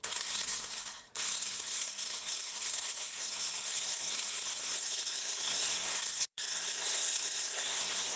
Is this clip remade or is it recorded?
remade